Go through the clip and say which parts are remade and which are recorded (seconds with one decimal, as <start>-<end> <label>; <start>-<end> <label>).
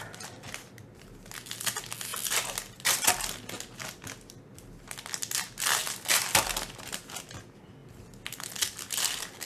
0.0-9.4 recorded